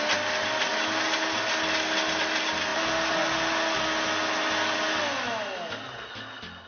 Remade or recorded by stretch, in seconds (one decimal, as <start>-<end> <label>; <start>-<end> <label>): 0.0-6.7 recorded